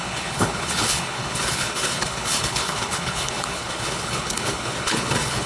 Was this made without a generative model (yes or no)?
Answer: no